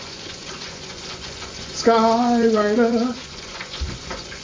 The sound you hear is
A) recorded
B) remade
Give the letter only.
B